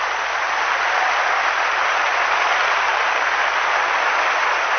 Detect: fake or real real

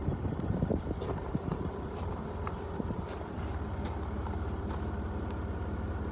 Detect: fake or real real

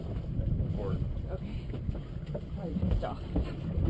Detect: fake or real real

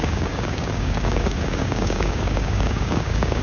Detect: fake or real fake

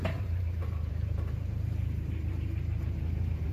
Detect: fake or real fake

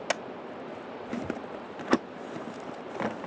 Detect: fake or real real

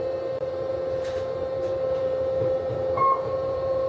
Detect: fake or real fake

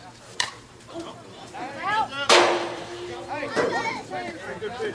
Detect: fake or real fake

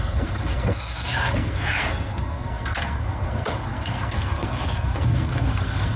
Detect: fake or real fake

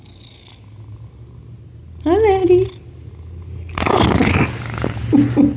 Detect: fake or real real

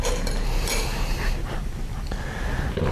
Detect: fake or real real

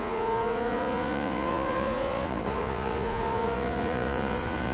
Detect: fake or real fake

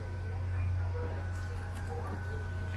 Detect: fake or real real